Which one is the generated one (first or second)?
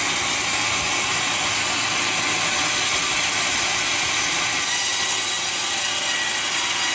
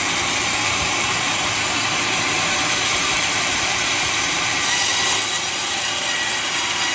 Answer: second